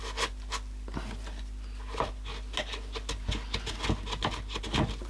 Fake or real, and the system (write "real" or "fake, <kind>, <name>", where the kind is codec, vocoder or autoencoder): real